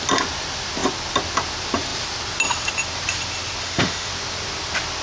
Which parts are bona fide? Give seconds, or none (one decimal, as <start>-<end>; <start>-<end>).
0.0-3.6; 4.1-5.0